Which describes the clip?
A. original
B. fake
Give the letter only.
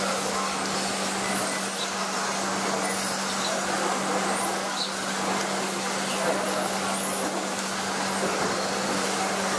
A